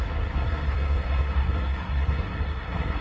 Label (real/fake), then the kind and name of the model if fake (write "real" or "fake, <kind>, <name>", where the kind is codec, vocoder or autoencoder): fake, codec, SNAC